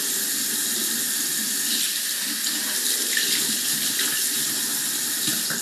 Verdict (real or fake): real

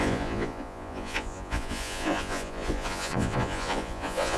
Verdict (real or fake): fake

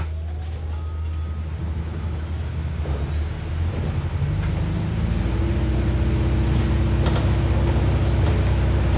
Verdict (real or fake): real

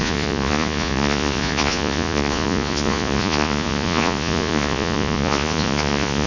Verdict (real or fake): fake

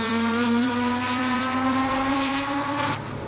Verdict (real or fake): fake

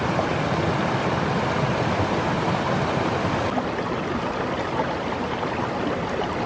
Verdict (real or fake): real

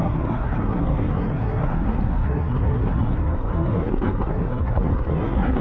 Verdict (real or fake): fake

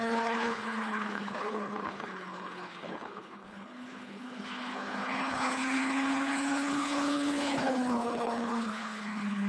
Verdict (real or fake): fake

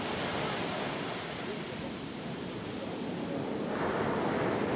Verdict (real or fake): fake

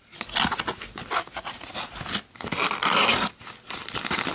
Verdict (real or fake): real